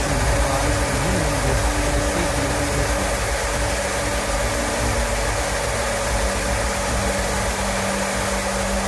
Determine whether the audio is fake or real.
real